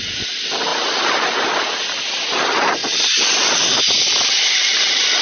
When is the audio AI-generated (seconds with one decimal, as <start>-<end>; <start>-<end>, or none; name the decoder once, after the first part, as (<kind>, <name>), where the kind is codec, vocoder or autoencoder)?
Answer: none

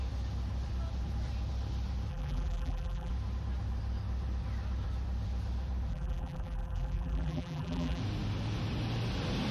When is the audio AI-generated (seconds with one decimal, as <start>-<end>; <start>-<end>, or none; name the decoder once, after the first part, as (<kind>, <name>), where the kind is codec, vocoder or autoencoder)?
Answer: 2.1-3.1 (vocoder, BigVGAN v2); 5.9-8.0

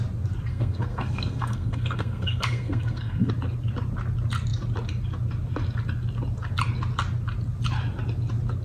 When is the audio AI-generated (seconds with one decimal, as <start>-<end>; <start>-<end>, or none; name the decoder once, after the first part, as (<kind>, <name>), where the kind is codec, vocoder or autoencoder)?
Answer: 0.5-3.3 (codec, SNAC)

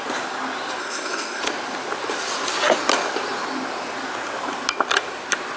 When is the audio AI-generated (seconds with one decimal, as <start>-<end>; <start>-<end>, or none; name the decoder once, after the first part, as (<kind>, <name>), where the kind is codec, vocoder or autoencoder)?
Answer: 0.8-1.4 (codec, SNAC)

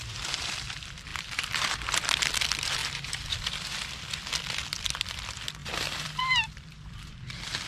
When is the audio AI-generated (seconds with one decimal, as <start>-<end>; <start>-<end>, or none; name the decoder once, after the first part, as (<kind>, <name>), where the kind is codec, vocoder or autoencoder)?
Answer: 0.0-2.8 (vocoder, BigVGAN v2); 5.0-7.7